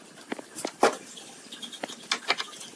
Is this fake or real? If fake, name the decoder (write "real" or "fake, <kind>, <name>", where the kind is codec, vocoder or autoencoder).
real